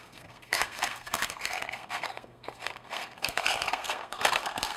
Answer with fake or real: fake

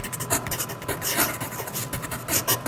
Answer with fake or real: real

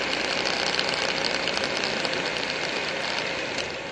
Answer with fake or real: fake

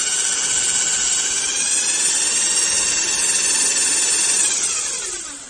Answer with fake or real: real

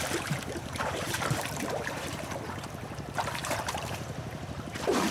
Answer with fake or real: fake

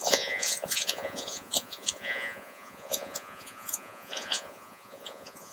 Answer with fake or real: fake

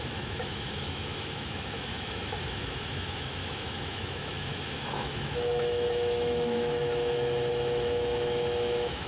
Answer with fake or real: fake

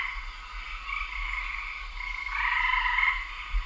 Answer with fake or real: real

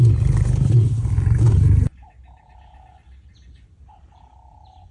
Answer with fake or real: real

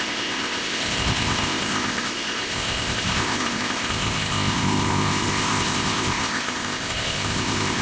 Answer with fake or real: fake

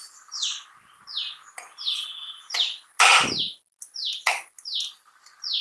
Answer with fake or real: real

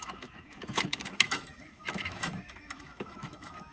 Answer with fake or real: fake